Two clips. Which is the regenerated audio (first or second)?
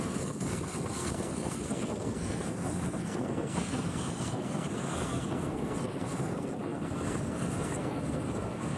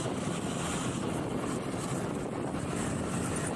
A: first